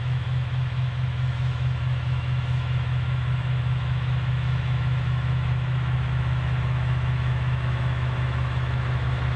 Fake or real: fake